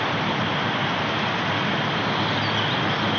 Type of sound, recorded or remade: recorded